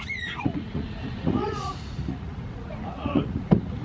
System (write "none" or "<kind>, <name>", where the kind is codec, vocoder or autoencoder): vocoder, Vocos